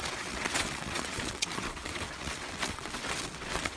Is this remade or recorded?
remade